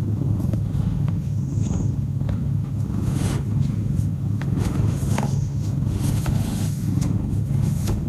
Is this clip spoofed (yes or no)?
yes